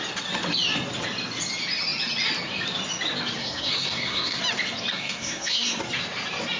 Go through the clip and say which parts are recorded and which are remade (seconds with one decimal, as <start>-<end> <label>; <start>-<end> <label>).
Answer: 0.0-3.4 recorded; 3.4-4.4 remade; 4.4-4.9 recorded; 4.9-5.8 remade; 5.8-6.6 recorded